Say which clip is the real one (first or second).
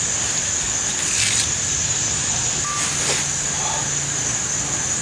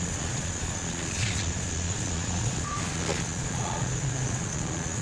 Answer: first